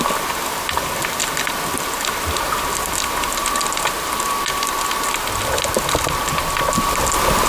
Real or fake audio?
real